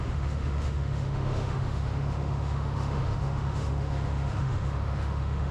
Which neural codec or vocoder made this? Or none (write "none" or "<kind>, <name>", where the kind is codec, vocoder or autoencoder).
autoencoder, DAC-VAE